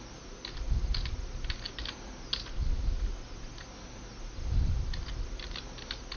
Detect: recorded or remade recorded